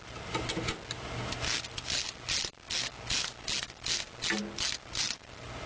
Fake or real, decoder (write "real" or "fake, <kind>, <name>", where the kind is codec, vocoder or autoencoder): real